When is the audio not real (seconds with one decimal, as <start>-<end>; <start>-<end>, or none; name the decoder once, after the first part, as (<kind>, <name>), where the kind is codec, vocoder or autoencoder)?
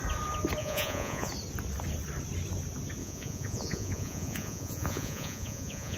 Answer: 0.6-1.3 (vocoder, Vocos); 3.0-6.0